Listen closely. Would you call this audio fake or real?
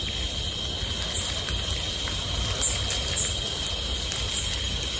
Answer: real